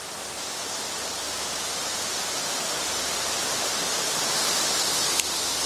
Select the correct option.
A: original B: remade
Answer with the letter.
A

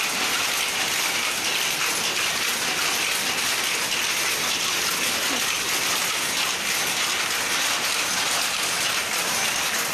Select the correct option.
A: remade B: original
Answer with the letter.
B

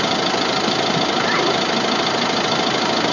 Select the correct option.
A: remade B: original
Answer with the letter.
B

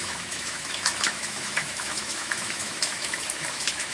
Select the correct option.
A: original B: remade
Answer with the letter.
B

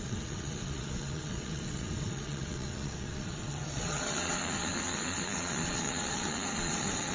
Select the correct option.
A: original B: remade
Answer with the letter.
B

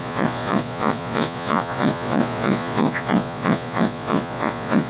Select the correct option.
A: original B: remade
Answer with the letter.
B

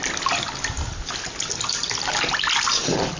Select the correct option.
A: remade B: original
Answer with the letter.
B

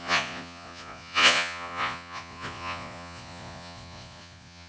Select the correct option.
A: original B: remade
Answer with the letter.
B